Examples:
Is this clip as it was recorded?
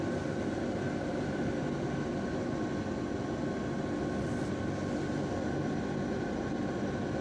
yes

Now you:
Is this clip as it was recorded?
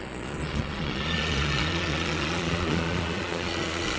no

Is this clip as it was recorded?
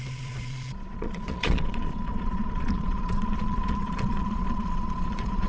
no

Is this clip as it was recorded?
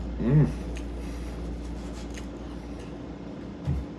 yes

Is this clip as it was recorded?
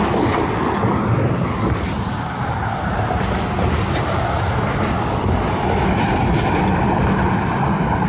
yes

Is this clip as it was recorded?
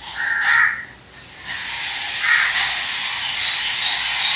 yes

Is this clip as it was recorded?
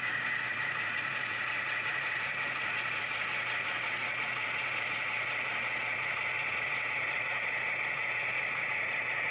no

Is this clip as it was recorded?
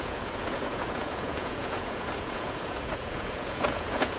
no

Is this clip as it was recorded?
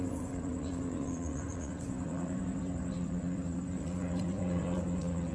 no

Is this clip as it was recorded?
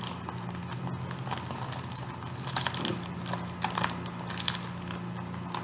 yes